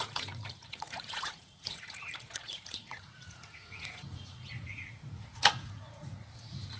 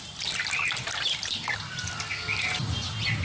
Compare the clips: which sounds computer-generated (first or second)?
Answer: first